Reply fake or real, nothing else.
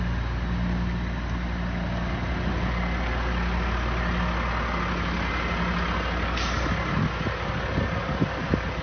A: real